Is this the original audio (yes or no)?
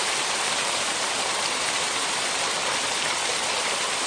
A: yes